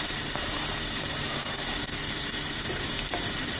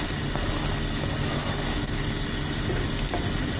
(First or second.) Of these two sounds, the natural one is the second